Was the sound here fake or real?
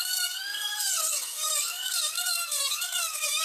fake